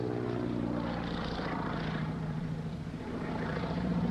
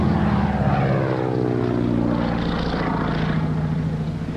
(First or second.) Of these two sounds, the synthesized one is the first